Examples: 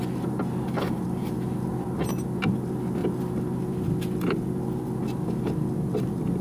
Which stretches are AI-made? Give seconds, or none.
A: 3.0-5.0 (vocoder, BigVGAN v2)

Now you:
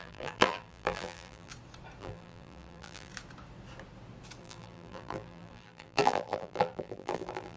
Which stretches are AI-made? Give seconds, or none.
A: 0.0-1.5 (vocoder, BigVGAN v2); 2.0-3.1; 4.4-7.6